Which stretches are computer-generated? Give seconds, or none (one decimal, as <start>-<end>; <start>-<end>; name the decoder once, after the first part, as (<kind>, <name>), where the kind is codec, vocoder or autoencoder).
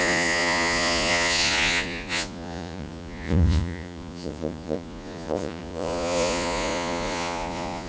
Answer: 0.0-7.9 (vocoder, Vocos)